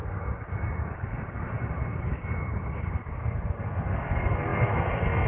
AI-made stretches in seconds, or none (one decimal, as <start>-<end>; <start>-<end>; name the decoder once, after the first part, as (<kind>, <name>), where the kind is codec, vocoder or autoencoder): 3.2-5.3 (codec, SNAC)